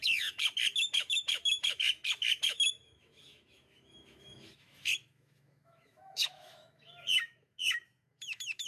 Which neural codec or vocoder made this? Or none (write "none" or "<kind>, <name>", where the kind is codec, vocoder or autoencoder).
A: autoencoder, DAC-VAE